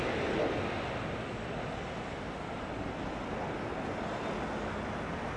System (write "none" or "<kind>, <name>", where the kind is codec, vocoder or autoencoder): none